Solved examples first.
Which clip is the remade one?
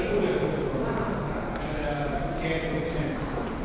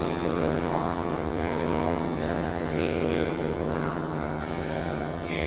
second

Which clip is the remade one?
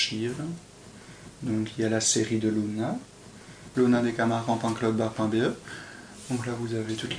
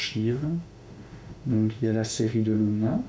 second